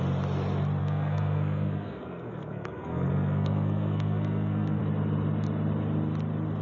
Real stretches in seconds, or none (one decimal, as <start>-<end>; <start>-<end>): 0.0-0.8; 4.8-6.6